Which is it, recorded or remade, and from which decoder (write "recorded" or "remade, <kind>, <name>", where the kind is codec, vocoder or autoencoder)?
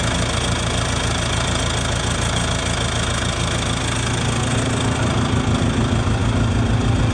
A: recorded